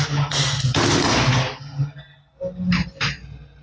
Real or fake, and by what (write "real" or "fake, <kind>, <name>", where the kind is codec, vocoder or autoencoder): real